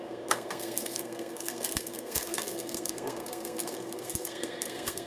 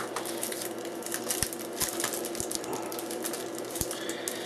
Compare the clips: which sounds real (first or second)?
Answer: second